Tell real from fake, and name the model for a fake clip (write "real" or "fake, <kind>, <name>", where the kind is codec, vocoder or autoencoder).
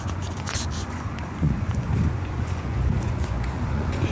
fake, vocoder, Vocos